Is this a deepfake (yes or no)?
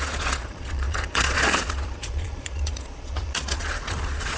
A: yes